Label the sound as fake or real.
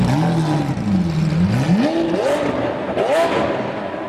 real